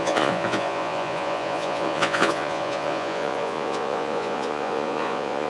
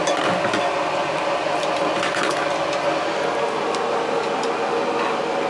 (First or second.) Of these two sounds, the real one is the second